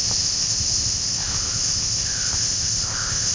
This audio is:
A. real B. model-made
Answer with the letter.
B